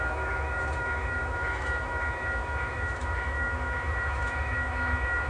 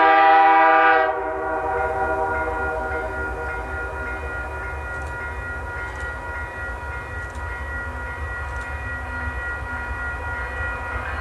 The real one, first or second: second